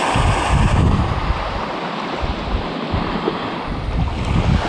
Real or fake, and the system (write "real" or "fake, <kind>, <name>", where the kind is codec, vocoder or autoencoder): real